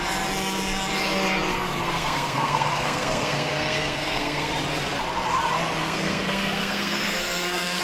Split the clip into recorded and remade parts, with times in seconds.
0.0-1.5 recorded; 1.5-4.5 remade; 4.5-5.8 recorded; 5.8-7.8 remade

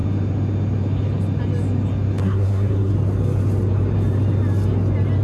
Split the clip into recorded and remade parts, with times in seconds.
0.0-2.2 recorded; 2.2-2.9 remade; 2.9-5.2 recorded

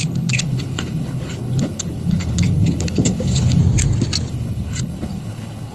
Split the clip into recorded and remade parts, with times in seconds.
0.0-3.6 remade; 3.6-4.3 recorded; 4.3-5.7 remade

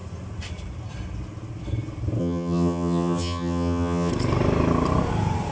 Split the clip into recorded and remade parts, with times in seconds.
0.0-2.2 recorded; 2.2-4.1 remade; 4.1-5.5 recorded

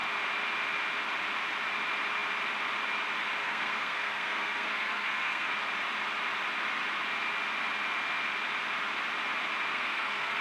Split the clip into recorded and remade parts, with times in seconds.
0.0-3.4 recorded; 3.4-5.5 remade; 5.5-9.7 recorded; 9.7-10.4 remade

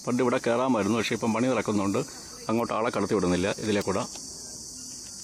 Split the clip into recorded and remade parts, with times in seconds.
0.0-5.2 recorded

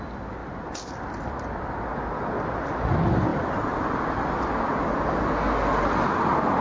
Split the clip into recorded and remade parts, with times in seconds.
0.0-0.4 recorded; 0.4-1.0 remade; 1.0-3.3 recorded; 3.3-5.2 remade; 5.2-6.6 recorded